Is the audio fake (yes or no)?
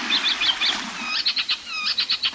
no